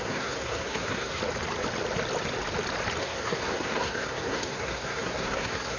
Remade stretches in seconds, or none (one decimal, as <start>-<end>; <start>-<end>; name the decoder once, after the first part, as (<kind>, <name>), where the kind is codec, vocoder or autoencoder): 0.0-1.2 (codec, SNAC); 3.0-5.8